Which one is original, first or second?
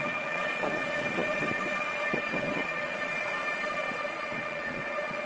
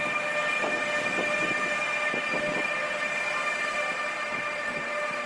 second